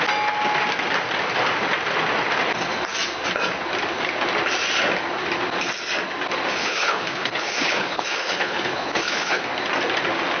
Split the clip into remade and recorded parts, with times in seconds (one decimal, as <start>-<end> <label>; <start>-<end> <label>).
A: 0.0-6.6 recorded; 6.6-9.4 remade; 9.4-10.4 recorded